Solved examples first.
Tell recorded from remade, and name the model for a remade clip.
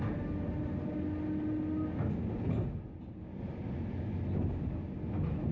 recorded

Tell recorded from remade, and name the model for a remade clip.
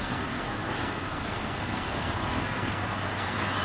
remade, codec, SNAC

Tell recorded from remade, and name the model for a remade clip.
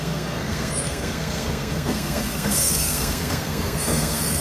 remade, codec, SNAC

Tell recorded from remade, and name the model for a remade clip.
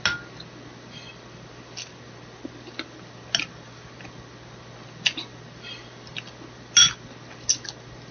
recorded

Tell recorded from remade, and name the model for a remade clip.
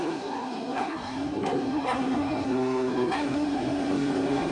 remade, codec, SNAC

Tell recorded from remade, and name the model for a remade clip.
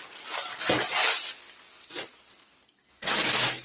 recorded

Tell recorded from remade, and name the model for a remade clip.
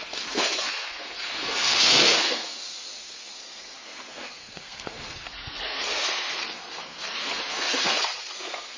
remade, codec, SNAC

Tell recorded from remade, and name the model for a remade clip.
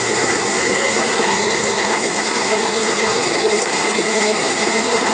remade, codec, SNAC